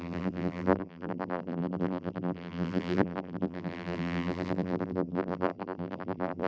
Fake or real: fake